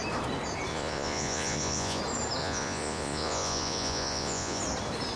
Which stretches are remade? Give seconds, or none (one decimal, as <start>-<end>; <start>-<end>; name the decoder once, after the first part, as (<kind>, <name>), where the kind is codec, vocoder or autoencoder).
0.7-2.0 (vocoder, Vocos); 2.4-4.6